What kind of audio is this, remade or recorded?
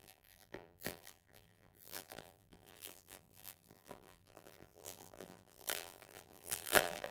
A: remade